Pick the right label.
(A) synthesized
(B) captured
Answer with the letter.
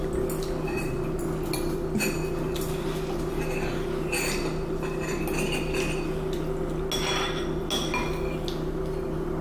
B